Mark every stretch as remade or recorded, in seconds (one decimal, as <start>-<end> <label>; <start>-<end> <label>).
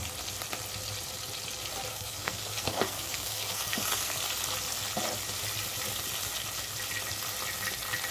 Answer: 0.0-1.9 recorded; 1.9-4.2 remade; 4.2-8.1 recorded